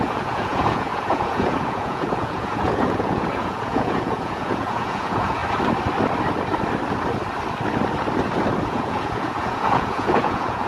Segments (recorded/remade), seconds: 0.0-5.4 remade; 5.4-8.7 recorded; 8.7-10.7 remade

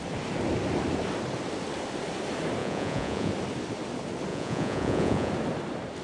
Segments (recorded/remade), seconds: 0.0-2.6 recorded; 2.6-3.3 remade; 3.3-4.3 recorded; 4.3-5.3 remade; 5.3-6.0 recorded

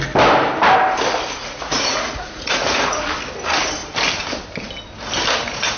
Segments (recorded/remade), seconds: 0.0-1.4 recorded; 1.4-3.1 remade; 3.1-5.8 recorded

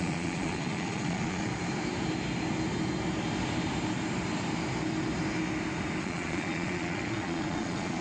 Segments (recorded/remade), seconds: 0.0-1.5 remade; 1.5-6.0 recorded; 6.0-8.0 remade

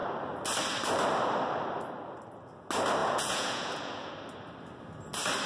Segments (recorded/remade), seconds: 0.0-3.0 recorded; 3.0-4.1 remade; 4.1-5.5 recorded

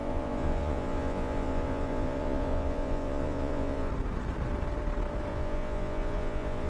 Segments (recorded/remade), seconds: 0.0-3.9 remade; 3.9-5.3 recorded; 5.3-6.7 remade